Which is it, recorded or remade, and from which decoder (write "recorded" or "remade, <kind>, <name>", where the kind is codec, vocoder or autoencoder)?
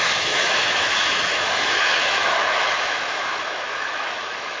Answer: remade, autoencoder, DAC-VAE